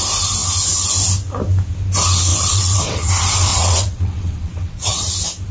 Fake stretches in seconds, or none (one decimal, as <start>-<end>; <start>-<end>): 2.3-3.1; 3.5-5.1